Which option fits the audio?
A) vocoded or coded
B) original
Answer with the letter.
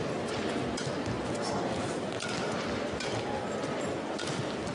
B